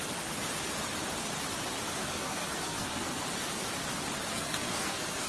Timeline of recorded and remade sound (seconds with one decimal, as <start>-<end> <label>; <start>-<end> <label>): 0.0-2.0 recorded; 2.0-3.2 remade; 3.2-4.3 recorded; 4.3-5.3 remade